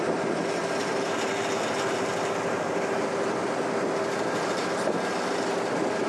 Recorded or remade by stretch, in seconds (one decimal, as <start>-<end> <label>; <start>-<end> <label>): 0.0-0.8 recorded; 0.8-1.3 remade; 1.3-6.1 recorded